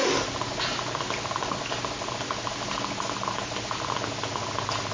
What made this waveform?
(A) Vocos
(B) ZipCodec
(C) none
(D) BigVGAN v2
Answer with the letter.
C